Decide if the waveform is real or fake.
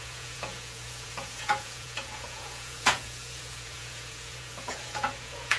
fake